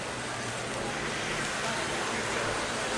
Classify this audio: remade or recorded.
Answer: recorded